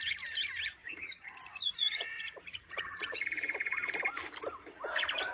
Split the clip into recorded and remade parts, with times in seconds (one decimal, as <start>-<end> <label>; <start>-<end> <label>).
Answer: 0.0-0.8 recorded; 0.8-4.0 remade; 4.0-5.3 recorded